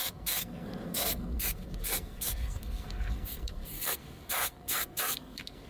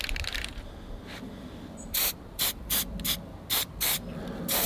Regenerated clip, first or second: first